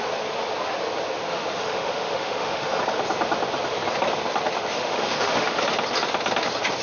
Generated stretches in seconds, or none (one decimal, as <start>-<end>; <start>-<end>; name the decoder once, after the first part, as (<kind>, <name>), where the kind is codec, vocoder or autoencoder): 1.3-2.8 (autoencoder, DAC-VAE); 4.7-5.6